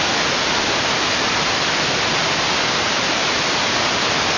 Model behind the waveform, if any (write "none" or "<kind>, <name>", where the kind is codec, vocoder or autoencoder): none